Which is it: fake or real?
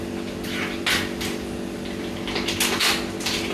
real